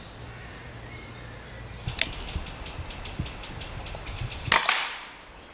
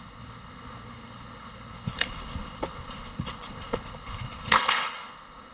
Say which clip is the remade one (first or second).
second